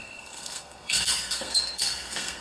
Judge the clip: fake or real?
fake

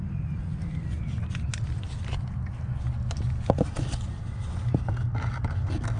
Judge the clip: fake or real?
real